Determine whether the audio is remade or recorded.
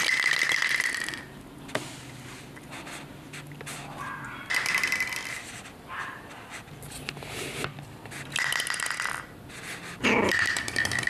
recorded